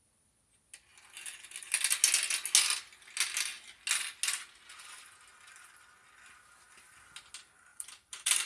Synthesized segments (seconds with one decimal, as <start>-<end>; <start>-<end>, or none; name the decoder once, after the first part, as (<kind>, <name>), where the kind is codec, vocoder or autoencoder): 7.7-8.5 (vocoder, BigVGAN v2)